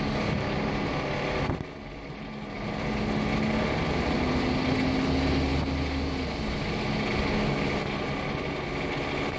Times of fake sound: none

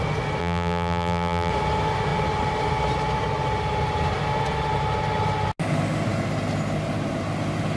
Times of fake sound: 0.4-1.5 (vocoder, BigVGAN v2)

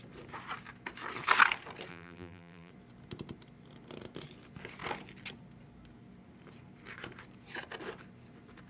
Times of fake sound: 1.9-2.7 (vocoder, BigVGAN v2)

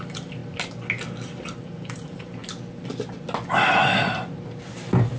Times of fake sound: 0.0-0.4 (vocoder, BigVGAN v2); 1.6-2.4

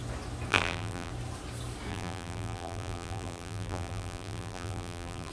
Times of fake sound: 0.5-1.1 (vocoder, BigVGAN v2); 1.9-5.3

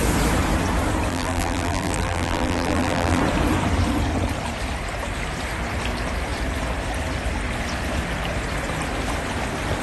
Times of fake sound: 1.1-3.2 (vocoder, BigVGAN v2)